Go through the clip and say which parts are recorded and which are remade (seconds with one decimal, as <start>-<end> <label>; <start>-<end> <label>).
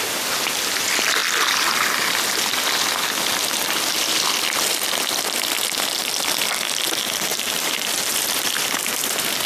0.0-7.3 recorded; 7.3-8.0 remade; 8.0-9.5 recorded